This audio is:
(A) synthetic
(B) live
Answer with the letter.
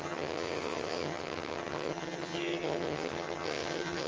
A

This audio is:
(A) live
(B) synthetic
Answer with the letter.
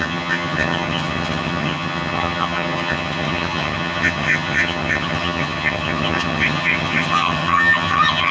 B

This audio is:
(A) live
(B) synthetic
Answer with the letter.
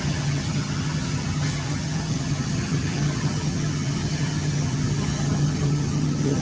B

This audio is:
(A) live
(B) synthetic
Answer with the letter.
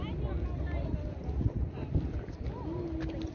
A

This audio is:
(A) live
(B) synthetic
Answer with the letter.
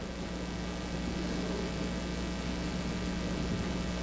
A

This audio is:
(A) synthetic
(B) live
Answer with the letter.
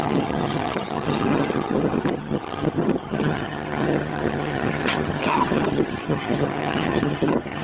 A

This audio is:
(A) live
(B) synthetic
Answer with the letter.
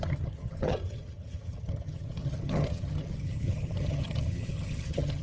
B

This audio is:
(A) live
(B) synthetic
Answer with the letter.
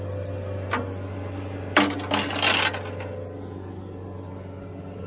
A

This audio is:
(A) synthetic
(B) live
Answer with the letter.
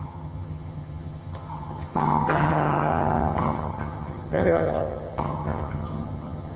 A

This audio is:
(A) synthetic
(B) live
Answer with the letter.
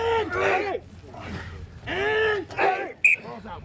B